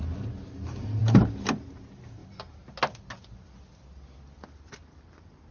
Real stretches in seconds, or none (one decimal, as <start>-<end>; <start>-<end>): 0.0-5.5